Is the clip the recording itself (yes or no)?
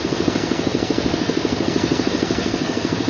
no